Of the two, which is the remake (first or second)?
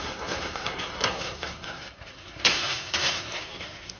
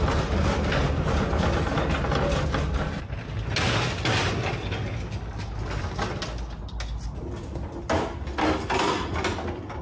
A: first